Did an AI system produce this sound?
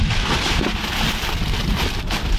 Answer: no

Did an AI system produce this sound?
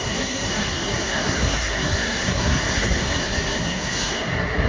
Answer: yes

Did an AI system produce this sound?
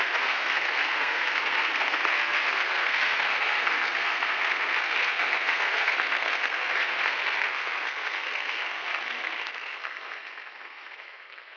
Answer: yes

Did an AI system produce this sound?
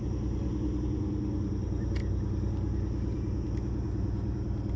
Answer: no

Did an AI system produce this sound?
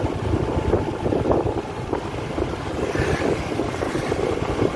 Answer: no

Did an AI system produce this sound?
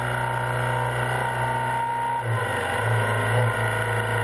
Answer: no